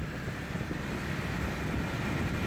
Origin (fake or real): fake